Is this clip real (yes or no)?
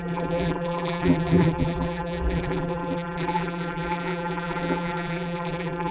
no